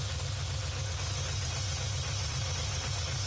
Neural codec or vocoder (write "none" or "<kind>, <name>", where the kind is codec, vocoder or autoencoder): none